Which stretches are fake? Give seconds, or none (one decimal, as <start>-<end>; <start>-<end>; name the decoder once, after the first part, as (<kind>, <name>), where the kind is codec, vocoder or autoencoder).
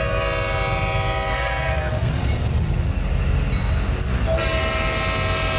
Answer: 1.3-2.1 (codec, SNAC)